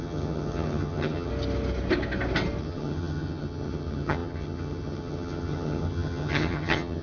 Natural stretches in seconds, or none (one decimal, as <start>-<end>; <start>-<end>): 1.3-2.6